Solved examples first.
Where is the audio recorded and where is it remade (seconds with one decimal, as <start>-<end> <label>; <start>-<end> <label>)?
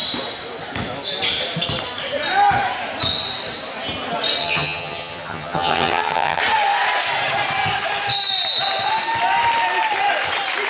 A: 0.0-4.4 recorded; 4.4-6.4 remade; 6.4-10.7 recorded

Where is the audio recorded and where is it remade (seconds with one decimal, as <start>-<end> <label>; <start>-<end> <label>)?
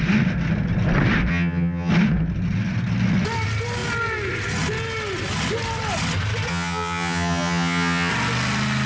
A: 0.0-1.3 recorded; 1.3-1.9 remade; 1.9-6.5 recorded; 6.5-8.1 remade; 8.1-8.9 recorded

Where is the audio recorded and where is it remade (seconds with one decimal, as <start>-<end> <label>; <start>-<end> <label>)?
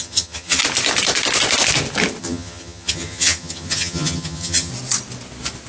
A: 0.0-0.6 remade; 0.6-2.2 recorded; 2.2-4.7 remade; 4.7-5.7 recorded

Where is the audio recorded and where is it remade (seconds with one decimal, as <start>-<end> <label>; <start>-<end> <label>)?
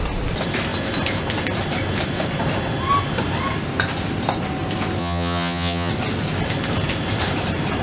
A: 0.0-5.0 recorded; 5.0-5.9 remade; 5.9-7.8 recorded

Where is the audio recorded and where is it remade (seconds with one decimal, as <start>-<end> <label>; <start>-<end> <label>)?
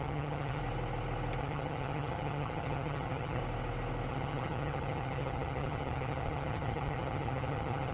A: 0.0-0.6 remade; 0.6-1.4 recorded; 1.4-3.4 remade; 3.4-4.1 recorded; 4.1-7.9 remade